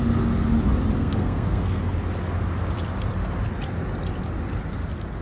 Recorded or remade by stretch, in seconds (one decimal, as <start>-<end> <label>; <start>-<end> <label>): 0.0-1.0 recorded; 1.0-1.8 remade; 1.8-5.2 recorded